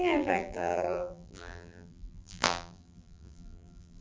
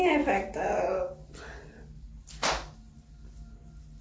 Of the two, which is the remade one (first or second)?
first